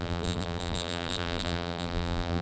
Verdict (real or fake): fake